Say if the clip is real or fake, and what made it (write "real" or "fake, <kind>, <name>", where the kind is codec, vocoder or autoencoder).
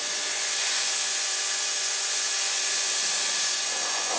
fake, vocoder, Vocos